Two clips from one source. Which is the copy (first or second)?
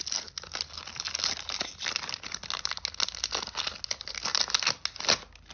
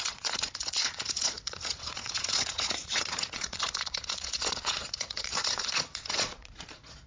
second